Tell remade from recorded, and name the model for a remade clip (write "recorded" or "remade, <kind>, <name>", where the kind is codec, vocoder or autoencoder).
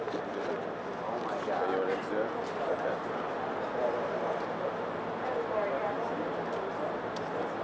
recorded